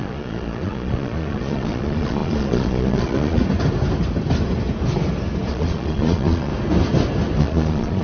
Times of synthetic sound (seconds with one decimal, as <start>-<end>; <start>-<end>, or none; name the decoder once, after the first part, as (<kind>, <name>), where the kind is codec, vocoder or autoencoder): 0.0-3.4 (vocoder, Vocos); 5.5-6.5; 7.4-8.0